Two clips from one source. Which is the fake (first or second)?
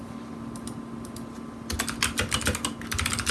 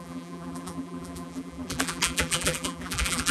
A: second